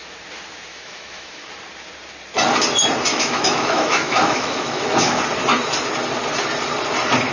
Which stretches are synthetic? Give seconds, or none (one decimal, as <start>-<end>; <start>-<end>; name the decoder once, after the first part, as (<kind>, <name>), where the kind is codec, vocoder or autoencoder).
0.7-1.5 (autoencoder, DAC-VAE); 3.1-5.2